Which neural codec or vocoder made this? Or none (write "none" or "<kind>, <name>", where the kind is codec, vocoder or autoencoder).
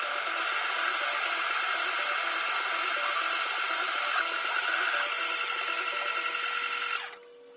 none